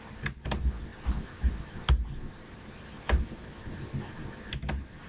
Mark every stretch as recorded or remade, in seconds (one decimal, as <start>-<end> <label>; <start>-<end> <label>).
0.0-5.1 recorded